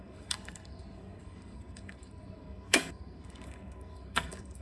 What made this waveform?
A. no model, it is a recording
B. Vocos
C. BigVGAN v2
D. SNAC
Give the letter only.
D